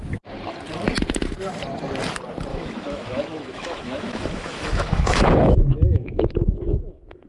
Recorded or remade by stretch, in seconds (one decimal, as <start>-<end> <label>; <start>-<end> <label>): 0.0-2.5 recorded; 2.5-7.3 remade